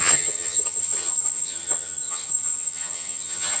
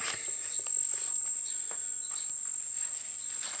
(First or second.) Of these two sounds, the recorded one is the second